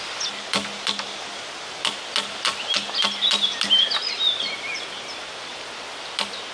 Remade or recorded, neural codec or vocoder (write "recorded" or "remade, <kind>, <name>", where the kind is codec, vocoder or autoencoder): recorded